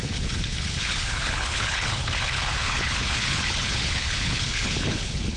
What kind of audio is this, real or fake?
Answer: fake